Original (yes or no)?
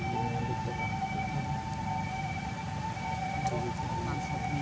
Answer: yes